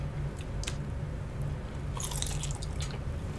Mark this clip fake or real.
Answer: real